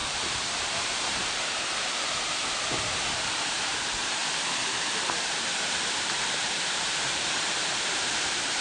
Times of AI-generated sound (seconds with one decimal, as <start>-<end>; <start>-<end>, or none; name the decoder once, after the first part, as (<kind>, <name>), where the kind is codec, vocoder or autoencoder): 0.0-4.2 (vocoder, BigVGAN v2); 5.1-8.6